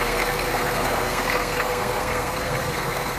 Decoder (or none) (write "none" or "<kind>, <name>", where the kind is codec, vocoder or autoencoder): codec, SNAC